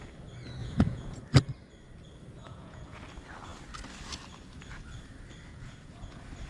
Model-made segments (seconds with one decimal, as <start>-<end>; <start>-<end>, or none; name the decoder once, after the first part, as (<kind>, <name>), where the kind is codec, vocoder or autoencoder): 0.6-1.2 (vocoder, Vocos); 2.4-3.0; 5.5-6.1